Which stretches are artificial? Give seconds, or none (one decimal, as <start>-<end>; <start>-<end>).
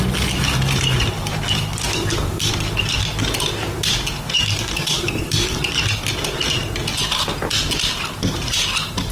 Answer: 1.9-2.5; 4.4-5.6